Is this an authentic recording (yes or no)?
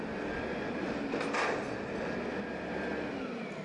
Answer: yes